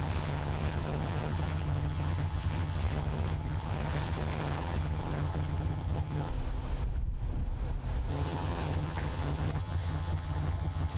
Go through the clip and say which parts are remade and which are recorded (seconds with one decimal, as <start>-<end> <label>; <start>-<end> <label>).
0.0-6.3 remade; 6.3-8.1 recorded; 8.1-11.0 remade